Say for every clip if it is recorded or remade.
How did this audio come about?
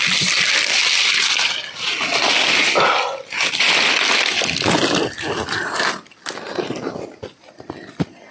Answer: recorded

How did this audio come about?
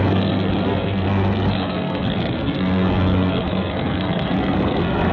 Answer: remade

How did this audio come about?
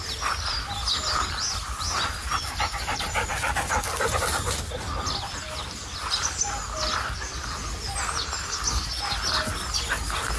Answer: recorded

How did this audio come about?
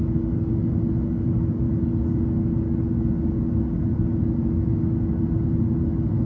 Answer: recorded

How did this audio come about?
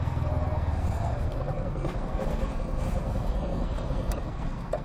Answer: remade